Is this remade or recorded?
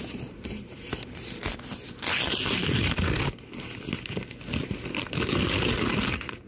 recorded